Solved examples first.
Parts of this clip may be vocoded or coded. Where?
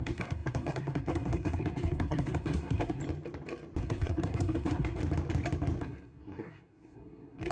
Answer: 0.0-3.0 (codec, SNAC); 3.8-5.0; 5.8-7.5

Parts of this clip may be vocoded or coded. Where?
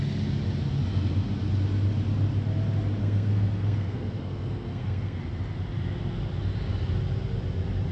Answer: 3.0-5.2 (codec, SNAC)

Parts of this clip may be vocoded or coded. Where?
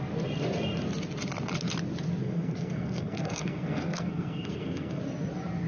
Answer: 2.2-5.0 (codec, SNAC)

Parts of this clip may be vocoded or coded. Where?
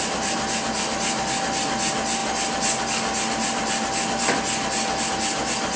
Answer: none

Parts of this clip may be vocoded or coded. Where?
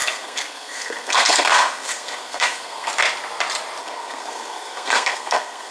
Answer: 0.0-2.9 (codec, SNAC); 3.8-5.7